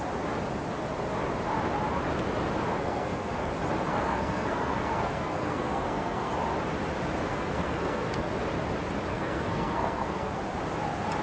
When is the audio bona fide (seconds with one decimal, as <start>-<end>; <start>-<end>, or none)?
0.0-2.8; 3.5-3.9; 6.3-7.3; 8.3-9.1; 10.4-11.2

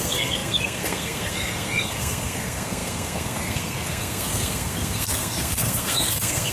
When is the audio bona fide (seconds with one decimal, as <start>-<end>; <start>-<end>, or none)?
none

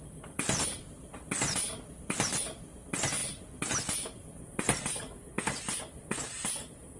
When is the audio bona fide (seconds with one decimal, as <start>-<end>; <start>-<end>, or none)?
0.0-7.0

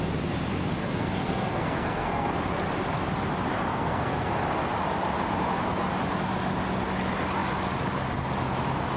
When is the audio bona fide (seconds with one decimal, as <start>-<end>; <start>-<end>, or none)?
0.0-0.8; 2.3-3.7; 4.3-9.0